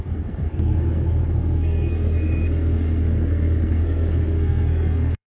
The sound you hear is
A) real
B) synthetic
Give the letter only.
B